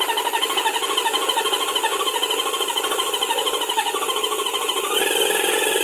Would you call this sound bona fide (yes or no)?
yes